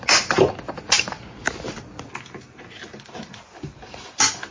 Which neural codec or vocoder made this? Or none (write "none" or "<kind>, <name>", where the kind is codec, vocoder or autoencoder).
none